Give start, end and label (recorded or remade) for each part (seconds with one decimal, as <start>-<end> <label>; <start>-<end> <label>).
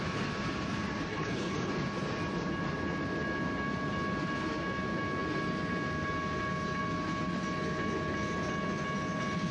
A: 0.0-1.1 recorded; 1.1-1.7 remade; 1.7-9.5 recorded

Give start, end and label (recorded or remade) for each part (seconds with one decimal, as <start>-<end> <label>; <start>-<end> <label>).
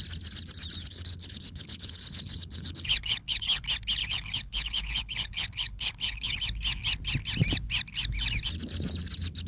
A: 0.0-0.9 recorded; 0.9-3.6 remade; 3.6-4.0 recorded; 4.0-6.4 remade; 6.4-9.5 recorded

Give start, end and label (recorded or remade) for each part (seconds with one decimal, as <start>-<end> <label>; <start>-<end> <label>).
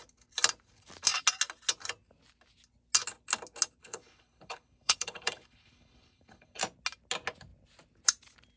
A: 0.0-3.8 recorded; 3.8-6.6 remade; 6.6-8.6 recorded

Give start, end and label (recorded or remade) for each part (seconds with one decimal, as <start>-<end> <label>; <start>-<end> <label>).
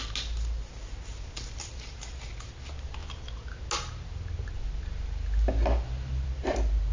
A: 0.0-6.9 recorded